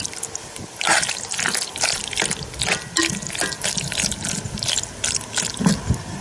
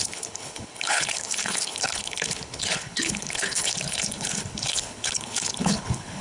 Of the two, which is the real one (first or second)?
first